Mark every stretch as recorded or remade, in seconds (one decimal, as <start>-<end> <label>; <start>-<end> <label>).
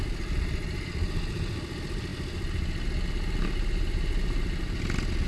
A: 0.0-5.3 recorded